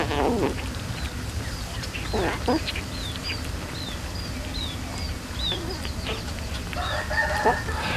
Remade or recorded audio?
recorded